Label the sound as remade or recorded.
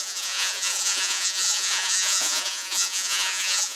remade